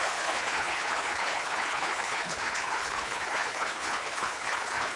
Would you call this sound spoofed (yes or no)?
yes